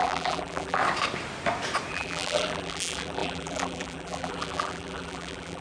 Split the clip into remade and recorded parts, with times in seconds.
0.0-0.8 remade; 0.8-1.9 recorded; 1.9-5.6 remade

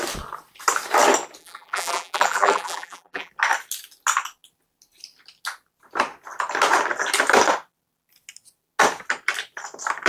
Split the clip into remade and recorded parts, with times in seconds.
0.0-1.4 recorded; 1.4-3.3 remade; 3.3-10.1 recorded

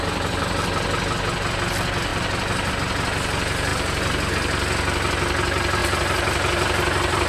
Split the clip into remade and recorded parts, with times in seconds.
0.0-3.7 recorded; 3.7-4.3 remade; 4.3-5.8 recorded; 5.8-7.3 remade

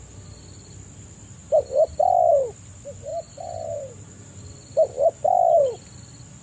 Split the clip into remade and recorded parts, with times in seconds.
0.0-1.4 recorded; 1.4-2.0 remade; 2.0-3.1 recorded; 3.1-4.2 remade; 4.2-6.4 recorded